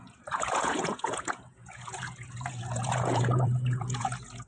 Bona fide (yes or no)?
no